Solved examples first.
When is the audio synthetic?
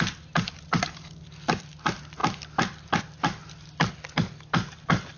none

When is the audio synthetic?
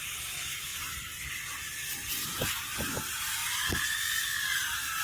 none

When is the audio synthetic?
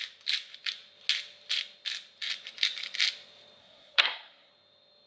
3.6-4.5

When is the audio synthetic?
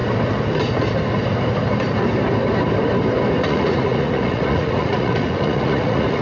3.4-6.2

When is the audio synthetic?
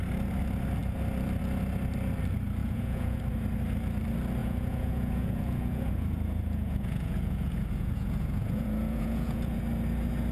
2.6-3.2; 4.4-9.6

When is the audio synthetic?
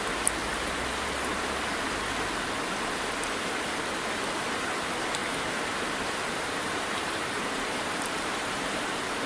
5.2-8.9